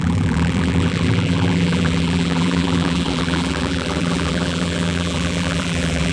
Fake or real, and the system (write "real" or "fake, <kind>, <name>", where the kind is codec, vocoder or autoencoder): fake, vocoder, BigVGAN v2